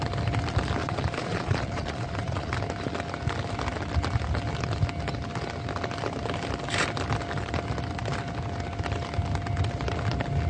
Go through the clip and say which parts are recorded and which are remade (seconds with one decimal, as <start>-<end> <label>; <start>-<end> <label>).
0.0-0.8 recorded; 0.8-2.5 remade; 2.5-10.5 recorded